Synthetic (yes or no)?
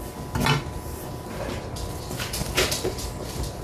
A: no